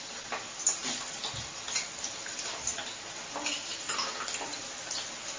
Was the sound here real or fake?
real